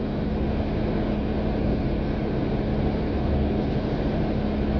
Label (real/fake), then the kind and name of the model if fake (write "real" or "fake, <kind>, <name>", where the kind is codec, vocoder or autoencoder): real